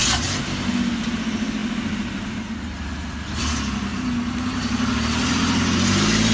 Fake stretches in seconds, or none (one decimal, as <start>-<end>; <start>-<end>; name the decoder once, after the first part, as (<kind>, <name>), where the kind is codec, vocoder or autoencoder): none